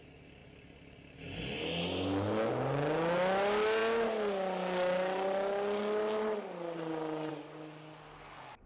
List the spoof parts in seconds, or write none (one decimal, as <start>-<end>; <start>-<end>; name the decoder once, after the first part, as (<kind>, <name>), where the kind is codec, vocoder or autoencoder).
none